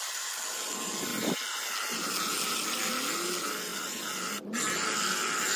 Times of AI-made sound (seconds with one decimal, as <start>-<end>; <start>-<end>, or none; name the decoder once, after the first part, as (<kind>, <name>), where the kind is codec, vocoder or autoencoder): 3.7-4.4 (vocoder, BigVGAN v2)